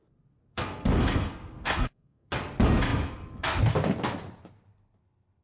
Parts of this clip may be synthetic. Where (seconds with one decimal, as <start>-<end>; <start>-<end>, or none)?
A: 0.5-2.3